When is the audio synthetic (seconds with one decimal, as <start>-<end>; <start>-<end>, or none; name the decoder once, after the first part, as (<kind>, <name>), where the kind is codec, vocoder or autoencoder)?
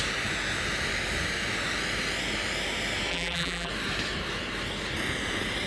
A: 3.1-3.7 (vocoder, BigVGAN v2)